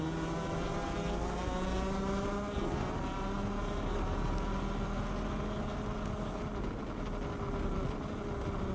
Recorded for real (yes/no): yes